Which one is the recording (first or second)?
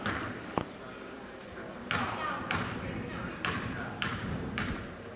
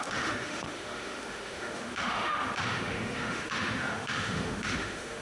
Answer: first